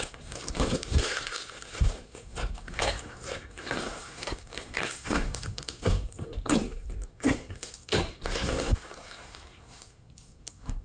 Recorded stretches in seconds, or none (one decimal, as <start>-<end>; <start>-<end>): none